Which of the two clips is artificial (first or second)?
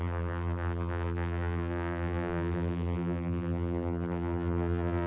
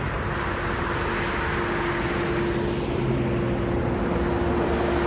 first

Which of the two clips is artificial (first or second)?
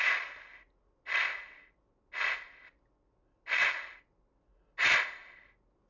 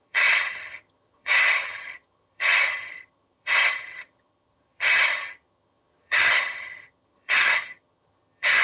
second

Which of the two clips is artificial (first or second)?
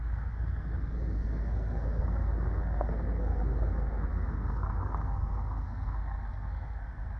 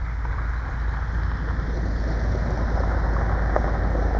first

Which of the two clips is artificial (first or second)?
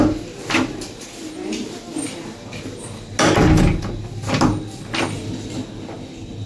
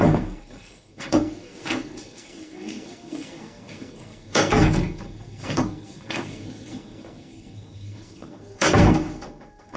second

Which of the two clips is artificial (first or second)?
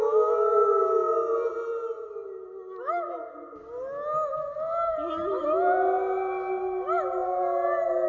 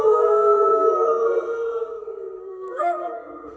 second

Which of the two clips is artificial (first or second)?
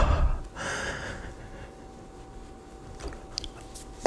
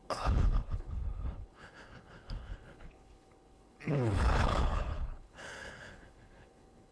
second